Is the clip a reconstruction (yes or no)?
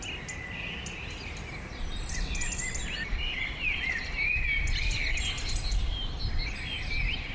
no